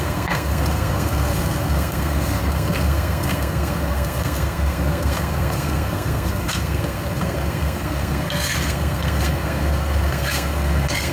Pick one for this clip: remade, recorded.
remade